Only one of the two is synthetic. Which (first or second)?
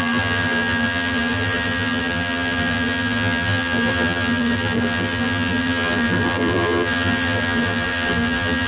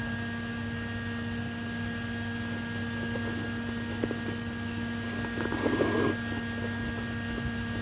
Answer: first